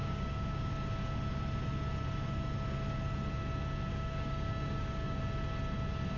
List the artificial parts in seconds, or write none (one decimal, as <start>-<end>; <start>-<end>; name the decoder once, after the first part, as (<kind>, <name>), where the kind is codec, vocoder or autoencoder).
0.0-0.7 (codec, DAC); 3.9-5.2